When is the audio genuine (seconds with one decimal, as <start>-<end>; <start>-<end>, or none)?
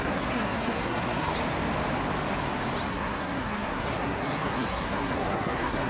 1.3-2.9